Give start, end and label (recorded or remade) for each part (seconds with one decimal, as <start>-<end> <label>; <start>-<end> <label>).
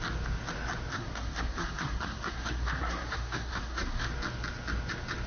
0.0-0.9 recorded; 0.9-4.1 remade; 4.1-5.3 recorded